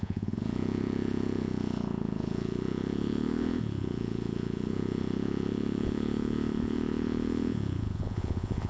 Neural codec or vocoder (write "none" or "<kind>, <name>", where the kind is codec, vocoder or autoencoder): vocoder, Vocos